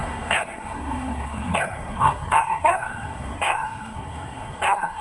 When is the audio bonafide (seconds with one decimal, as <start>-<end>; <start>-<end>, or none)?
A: none

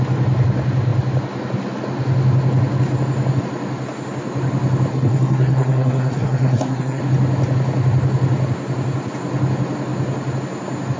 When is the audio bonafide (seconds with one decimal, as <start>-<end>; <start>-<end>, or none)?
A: 0.0-4.9; 7.0-11.0